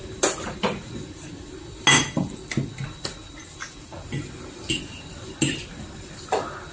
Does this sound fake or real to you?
real